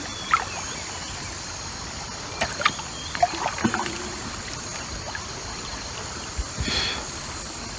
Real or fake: real